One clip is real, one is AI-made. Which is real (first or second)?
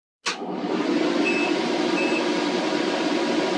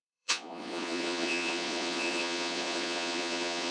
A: first